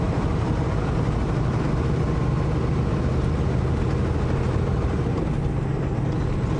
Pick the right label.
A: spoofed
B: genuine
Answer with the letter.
B